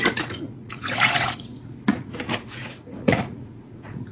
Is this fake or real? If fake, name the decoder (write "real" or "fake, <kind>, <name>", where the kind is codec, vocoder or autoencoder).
fake, vocoder, Vocos